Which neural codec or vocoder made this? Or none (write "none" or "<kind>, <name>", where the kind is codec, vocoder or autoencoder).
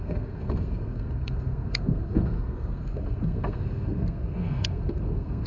codec, SNAC